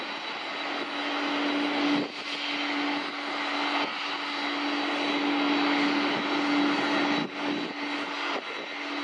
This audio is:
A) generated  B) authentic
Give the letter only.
B